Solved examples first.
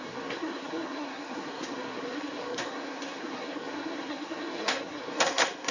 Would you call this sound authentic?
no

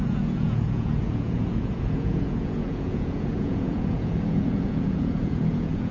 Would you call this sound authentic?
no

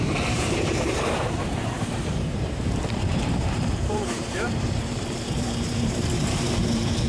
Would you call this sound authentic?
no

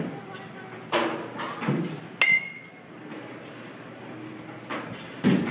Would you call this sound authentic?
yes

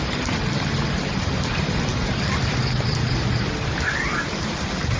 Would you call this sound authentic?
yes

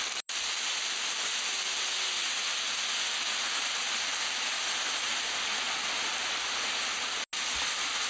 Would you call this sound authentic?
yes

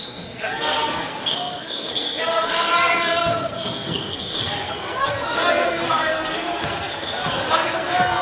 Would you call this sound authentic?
no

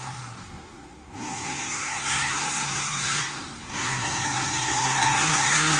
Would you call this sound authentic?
no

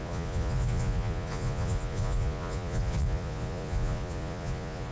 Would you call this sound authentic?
no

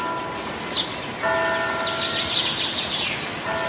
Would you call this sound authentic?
yes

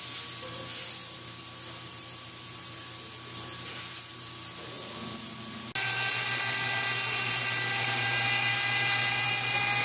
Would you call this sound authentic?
yes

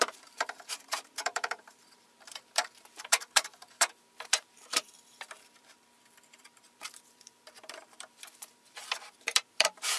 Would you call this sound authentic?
no